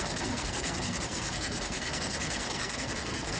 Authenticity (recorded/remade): remade